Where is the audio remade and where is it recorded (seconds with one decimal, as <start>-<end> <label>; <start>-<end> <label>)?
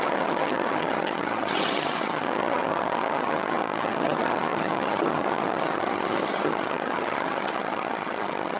0.0-8.6 remade